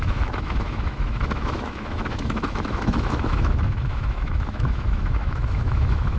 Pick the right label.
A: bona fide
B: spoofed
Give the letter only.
B